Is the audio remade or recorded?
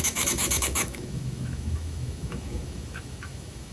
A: remade